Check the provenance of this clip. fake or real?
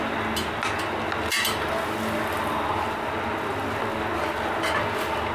real